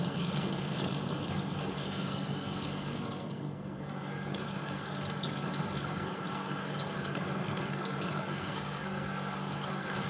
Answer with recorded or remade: remade